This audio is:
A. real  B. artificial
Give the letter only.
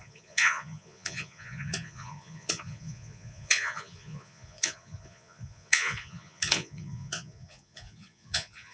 B